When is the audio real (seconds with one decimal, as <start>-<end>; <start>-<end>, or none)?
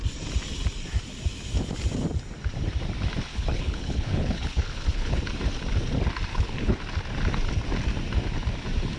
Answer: 0.0-3.3; 5.2-6.3; 6.8-9.0